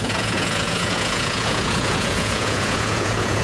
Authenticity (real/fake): fake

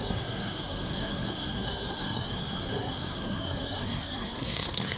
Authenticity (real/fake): fake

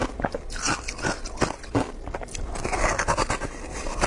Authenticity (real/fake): real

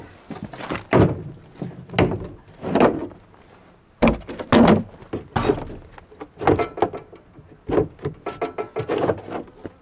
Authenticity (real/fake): real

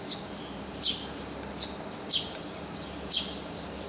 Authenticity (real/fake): real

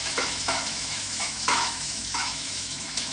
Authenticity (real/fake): fake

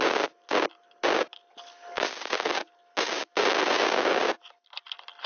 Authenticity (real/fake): real